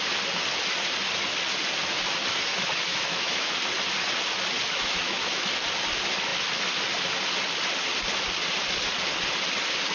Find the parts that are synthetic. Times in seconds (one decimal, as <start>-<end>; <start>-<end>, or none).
2.5-3.5; 4.8-5.4